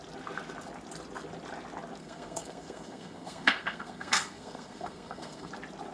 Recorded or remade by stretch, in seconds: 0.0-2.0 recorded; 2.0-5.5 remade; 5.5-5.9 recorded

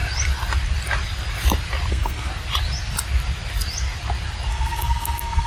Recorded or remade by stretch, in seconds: 0.0-1.9 recorded; 1.9-2.3 remade; 2.3-4.5 recorded; 4.5-5.5 remade